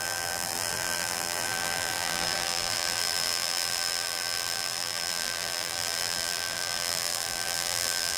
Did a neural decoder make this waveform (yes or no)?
yes